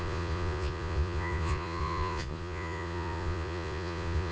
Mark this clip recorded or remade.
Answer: remade